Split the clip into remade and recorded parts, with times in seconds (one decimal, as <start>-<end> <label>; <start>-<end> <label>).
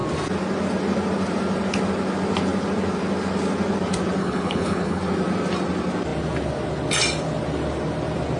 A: 0.0-4.2 recorded; 4.2-5.0 remade; 5.0-8.4 recorded